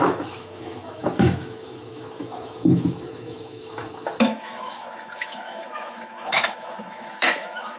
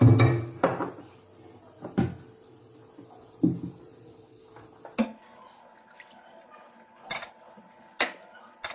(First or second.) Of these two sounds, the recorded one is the second